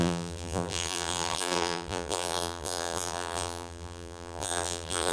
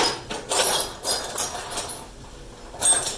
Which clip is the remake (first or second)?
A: first